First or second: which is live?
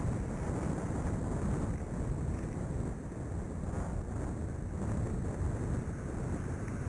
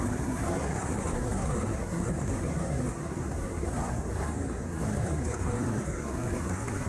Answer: first